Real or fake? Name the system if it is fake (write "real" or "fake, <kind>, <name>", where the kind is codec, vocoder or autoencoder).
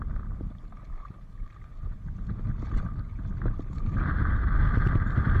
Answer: real